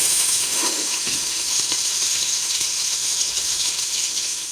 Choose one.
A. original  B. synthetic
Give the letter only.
B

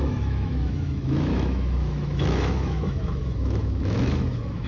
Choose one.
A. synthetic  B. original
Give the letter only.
A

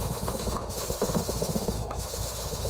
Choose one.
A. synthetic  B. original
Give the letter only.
A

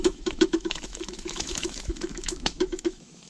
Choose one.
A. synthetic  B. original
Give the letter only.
A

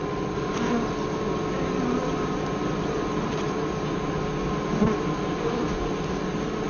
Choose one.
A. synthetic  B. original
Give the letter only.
B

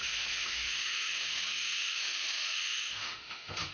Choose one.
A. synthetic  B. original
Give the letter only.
A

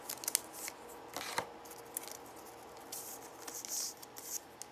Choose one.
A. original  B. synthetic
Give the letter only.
A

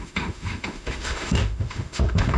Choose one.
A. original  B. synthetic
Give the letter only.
B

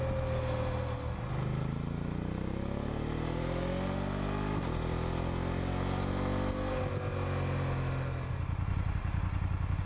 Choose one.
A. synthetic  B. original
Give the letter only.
B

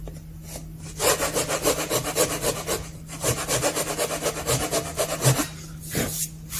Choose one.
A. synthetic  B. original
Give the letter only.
B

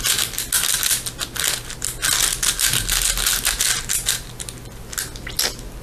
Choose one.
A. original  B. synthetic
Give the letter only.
A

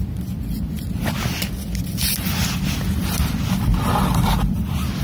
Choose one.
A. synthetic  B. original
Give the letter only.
B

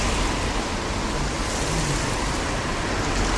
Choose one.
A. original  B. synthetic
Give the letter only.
A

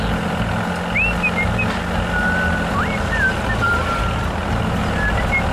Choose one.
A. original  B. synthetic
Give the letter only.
A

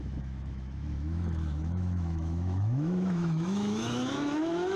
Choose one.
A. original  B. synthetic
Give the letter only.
B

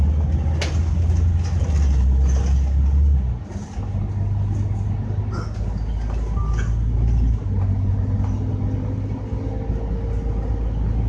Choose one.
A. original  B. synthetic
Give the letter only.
A